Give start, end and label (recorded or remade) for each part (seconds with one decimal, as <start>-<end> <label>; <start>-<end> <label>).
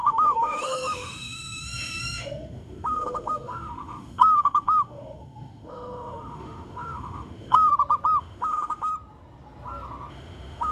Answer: 0.0-7.7 remade; 7.7-8.2 recorded; 8.2-8.9 remade; 8.9-10.1 recorded; 10.1-10.7 remade